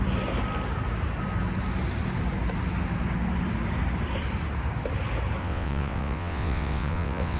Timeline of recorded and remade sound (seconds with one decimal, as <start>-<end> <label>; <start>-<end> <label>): 0.0-5.4 recorded; 5.4-7.4 remade